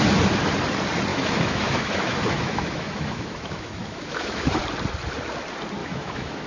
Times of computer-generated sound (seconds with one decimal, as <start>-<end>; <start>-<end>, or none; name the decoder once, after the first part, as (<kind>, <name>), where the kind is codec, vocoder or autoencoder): 1.1-4.6 (autoencoder, DAC-VAE); 5.8-6.5